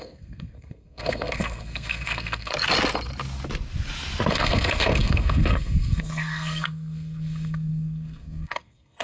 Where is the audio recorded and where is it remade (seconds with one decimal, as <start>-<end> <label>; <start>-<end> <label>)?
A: 0.0-2.5 remade; 2.5-4.3 recorded; 4.3-9.0 remade